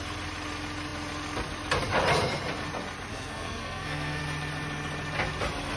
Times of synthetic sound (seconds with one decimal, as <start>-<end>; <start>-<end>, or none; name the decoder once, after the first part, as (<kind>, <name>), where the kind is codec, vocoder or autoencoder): 3.1-4.2 (codec, SNAC)